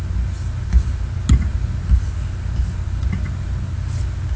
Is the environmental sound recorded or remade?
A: recorded